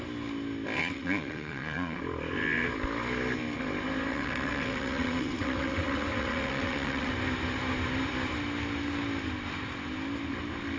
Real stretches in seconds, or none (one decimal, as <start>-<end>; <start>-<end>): 0.0-0.8; 2.0-4.1; 7.1-10.8